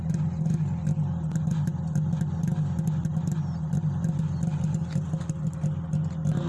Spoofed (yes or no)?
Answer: no